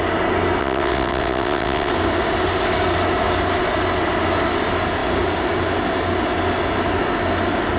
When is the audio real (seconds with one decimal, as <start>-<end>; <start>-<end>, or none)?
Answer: 0.0-0.6; 1.9-7.8